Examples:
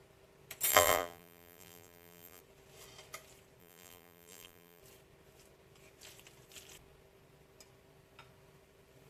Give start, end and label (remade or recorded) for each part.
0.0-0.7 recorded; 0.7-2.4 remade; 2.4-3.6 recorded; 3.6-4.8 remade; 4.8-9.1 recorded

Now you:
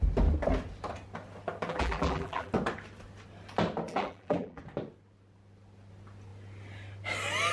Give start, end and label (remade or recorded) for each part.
0.0-1.7 recorded; 1.7-2.5 remade; 2.5-3.9 recorded; 3.9-4.6 remade; 4.6-7.5 recorded

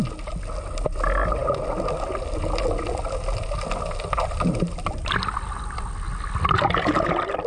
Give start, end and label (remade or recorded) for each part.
0.0-7.5 recorded